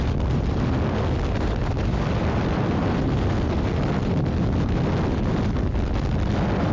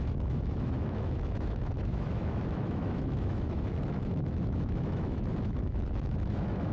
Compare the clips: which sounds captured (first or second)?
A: first